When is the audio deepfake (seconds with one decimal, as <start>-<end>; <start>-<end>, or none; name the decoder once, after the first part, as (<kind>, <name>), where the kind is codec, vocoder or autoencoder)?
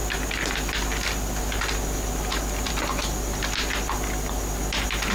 none